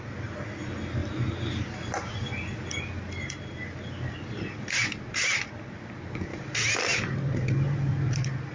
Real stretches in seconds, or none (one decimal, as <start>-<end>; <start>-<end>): 0.0-8.5